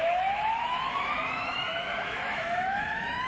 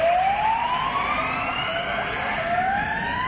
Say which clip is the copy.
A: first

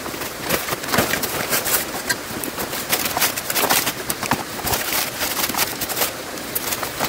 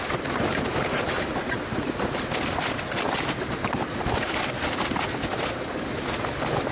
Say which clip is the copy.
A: first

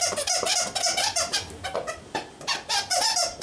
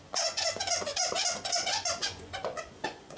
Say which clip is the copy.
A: second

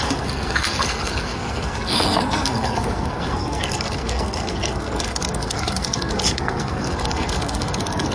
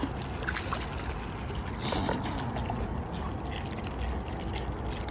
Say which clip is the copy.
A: first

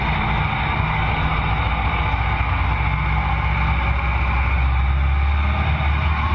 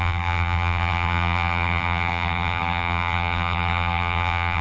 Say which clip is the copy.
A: second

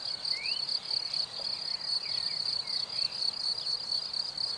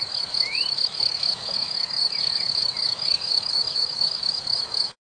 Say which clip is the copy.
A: second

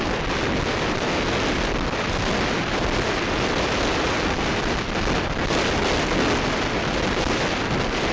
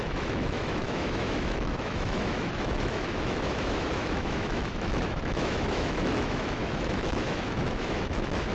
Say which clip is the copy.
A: second